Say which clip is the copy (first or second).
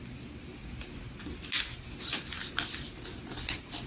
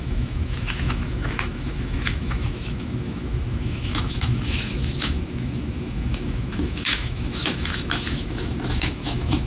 second